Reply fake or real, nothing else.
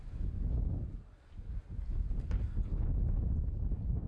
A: real